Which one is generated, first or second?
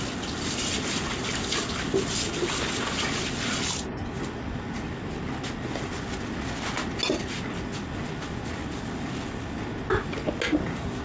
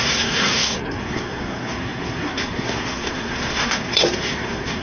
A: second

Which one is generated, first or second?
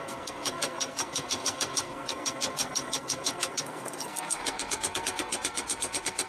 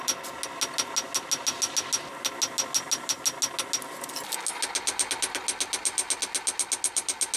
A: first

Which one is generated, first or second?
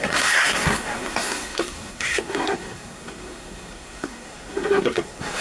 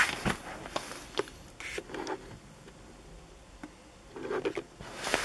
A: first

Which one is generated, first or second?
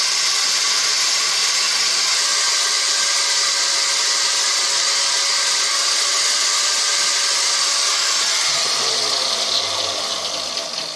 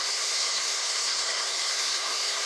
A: second